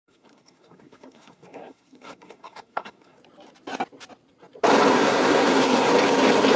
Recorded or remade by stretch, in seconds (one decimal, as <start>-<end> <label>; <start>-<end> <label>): 0.0-3.2 remade; 3.2-4.9 recorded; 4.9-5.9 remade; 5.9-6.6 recorded